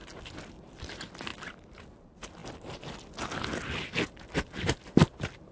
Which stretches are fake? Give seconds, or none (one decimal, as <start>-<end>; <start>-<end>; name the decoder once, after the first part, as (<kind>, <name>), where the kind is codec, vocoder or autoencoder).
none